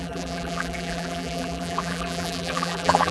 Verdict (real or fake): fake